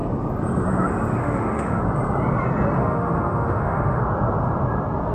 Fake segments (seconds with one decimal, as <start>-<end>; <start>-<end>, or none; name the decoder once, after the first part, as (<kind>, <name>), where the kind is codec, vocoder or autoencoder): 1.2-1.8 (autoencoder, DAC-VAE); 2.8-4.0